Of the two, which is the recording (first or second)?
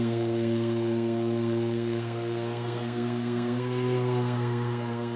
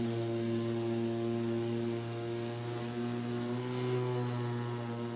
second